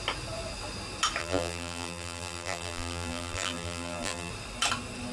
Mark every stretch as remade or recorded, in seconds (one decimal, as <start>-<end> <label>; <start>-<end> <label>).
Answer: 0.0-1.2 recorded; 1.2-4.3 remade; 4.3-5.1 recorded